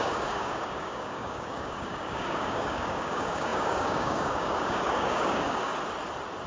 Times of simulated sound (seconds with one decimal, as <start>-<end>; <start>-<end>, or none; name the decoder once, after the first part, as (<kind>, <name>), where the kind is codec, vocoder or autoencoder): 0.0-5.7 (codec, DAC)